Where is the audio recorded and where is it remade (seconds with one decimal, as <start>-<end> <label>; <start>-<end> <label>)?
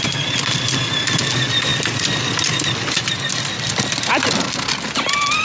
0.0-5.4 recorded